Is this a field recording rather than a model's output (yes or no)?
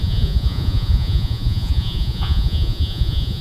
no